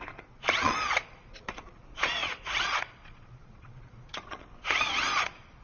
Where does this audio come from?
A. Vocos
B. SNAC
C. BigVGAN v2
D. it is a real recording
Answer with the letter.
A